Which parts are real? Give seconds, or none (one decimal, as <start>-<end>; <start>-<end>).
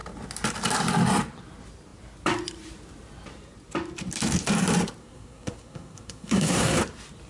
0.0-5.0; 6.8-7.3